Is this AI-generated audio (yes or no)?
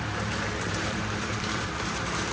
yes